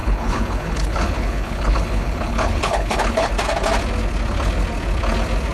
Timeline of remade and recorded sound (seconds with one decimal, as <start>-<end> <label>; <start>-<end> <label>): 0.0-3.3 remade; 3.3-5.5 recorded